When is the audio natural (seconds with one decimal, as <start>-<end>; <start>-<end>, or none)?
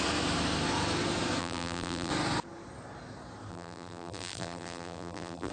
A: 0.0-1.4; 2.1-3.5